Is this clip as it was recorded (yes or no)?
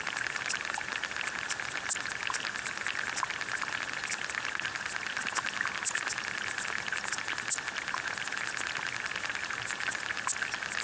yes